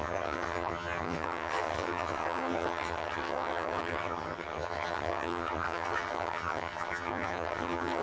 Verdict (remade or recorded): remade